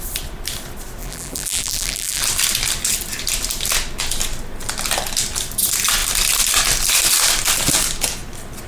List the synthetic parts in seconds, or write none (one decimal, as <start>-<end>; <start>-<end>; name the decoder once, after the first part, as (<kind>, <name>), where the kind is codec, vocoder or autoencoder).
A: 1.0-2.2 (vocoder, BigVGAN v2)